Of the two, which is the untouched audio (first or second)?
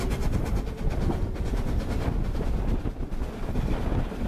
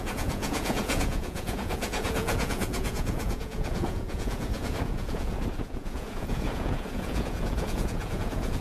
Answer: first